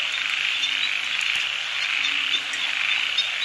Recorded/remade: recorded